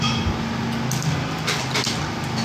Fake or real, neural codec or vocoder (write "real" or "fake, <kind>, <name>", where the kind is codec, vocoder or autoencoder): real